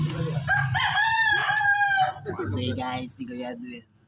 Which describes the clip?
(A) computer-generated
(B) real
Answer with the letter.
B